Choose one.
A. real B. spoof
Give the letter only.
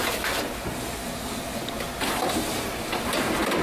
A